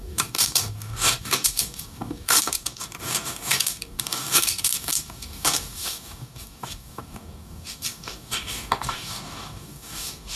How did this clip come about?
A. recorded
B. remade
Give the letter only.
B